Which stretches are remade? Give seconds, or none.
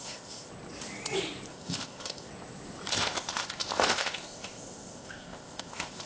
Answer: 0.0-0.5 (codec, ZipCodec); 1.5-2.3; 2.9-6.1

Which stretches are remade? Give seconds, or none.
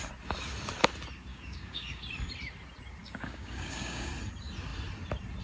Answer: 1.3-2.0 (codec, DAC); 3.0-4.1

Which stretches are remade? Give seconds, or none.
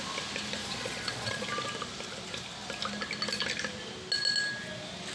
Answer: 0.6-1.5 (vocoder, Vocos)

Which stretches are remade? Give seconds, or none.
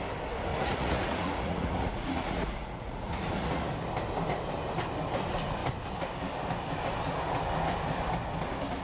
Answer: 0.5-3.7 (vocoder, Vocos)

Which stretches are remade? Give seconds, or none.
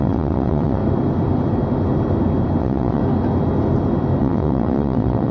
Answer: 0.0-0.8 (vocoder, WaveNeXt); 2.6-3.0; 4.2-5.3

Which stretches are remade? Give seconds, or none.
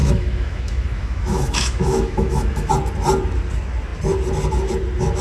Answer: 0.0-2.7 (autoencoder, DAC-VAE)